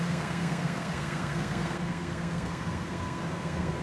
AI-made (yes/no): yes